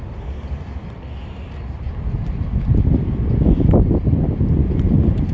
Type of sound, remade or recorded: recorded